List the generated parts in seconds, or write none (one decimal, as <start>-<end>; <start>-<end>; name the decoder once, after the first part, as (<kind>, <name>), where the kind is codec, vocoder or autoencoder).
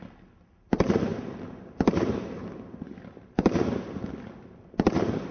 none